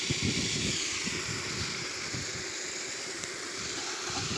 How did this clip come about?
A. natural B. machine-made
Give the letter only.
A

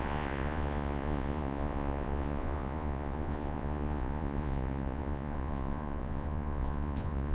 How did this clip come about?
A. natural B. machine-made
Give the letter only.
B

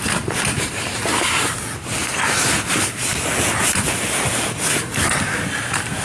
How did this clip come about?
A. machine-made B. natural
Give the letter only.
B